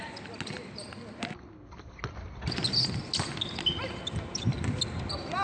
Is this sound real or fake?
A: real